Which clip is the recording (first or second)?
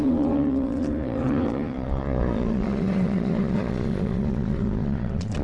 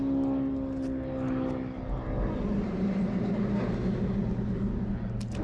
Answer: second